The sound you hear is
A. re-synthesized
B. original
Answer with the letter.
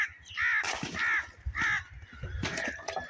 B